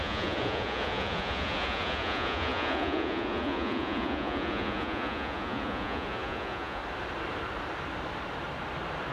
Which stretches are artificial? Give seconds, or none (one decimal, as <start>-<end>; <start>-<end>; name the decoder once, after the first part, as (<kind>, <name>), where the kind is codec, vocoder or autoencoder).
0.0-6.8 (vocoder, Vocos)